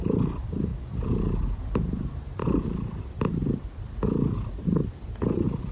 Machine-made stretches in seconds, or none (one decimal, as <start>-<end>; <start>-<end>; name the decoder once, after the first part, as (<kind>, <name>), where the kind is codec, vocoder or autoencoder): 0.0-0.7 (vocoder, BigVGAN v2); 1.9-2.4; 3.0-3.4